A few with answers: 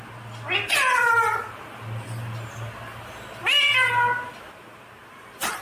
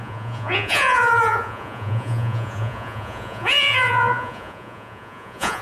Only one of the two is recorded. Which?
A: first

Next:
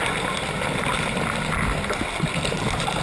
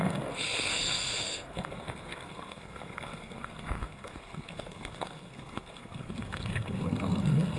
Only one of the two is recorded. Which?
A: first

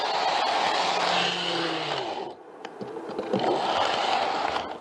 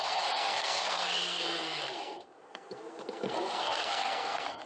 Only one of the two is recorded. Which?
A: first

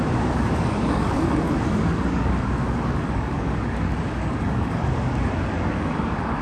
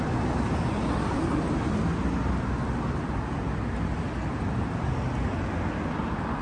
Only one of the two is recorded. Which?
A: second